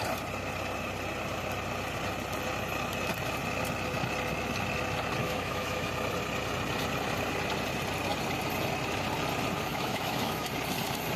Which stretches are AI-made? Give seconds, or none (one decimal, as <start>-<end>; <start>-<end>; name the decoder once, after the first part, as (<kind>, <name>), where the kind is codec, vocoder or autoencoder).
5.2-5.9 (autoencoder, DAC-VAE); 9.7-10.5